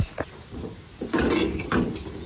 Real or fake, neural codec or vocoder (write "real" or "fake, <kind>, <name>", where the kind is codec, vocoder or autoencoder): real